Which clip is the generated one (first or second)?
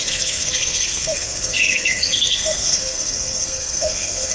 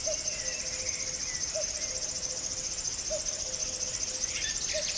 first